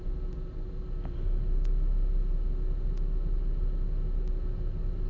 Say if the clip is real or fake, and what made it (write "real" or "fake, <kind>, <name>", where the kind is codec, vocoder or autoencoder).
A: real